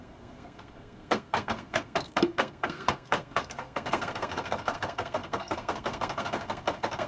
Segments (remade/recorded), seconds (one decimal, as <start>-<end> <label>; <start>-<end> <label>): 0.0-7.1 remade